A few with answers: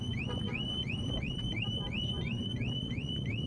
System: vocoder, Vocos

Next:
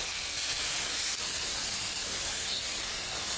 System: codec, SNAC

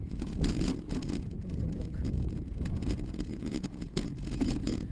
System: vocoder, Vocos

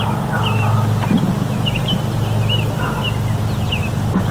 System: none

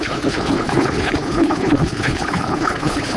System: codec, HILCodec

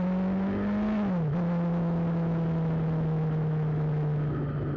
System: none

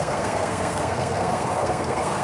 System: codec, SNAC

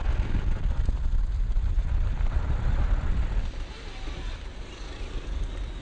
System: none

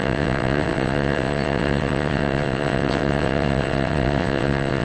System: vocoder, WaveNeXt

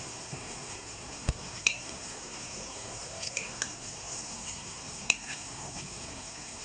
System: codec, SNAC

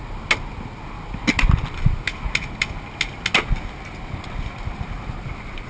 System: none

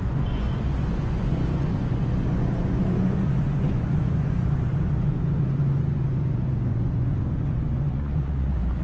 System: vocoder, Vocos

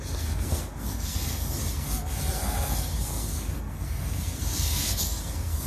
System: codec, SNAC